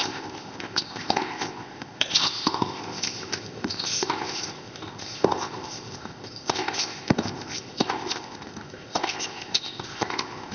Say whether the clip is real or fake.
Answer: fake